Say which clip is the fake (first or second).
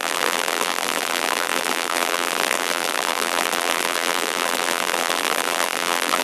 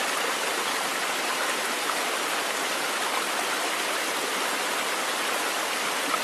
first